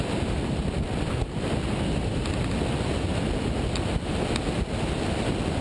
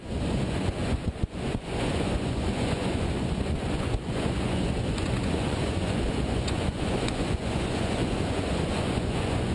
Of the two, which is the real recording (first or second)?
first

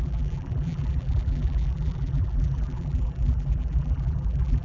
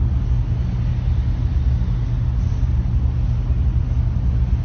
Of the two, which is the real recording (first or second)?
second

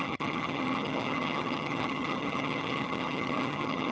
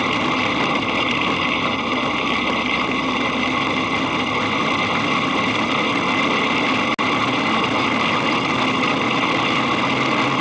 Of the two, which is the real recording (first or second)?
second